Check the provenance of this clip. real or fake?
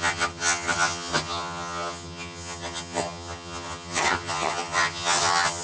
fake